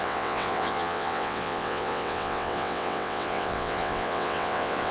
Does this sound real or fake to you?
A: fake